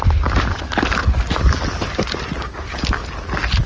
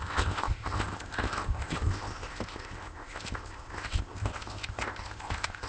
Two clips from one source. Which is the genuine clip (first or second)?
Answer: first